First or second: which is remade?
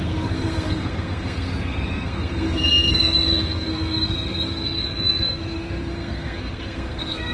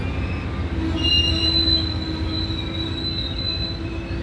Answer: first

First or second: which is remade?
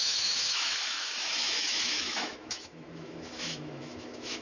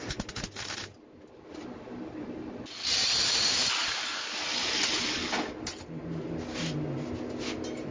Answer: first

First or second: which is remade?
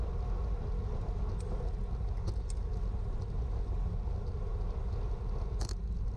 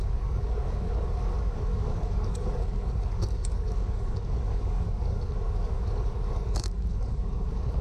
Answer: second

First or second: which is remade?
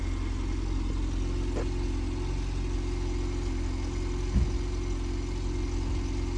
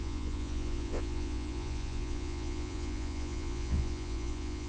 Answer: second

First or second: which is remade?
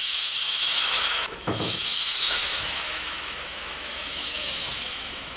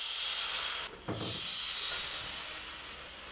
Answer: first